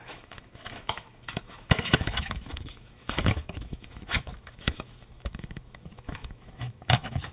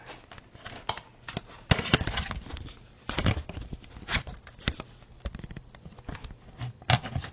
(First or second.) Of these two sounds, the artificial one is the first